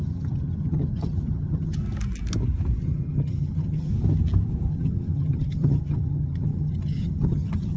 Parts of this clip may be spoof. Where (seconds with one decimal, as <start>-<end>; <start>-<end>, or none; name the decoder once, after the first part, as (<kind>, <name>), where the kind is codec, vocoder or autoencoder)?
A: 0.0-1.8 (vocoder, HiFi-GAN); 2.8-3.9; 4.7-7.8